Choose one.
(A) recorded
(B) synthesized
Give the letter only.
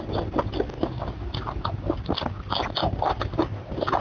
A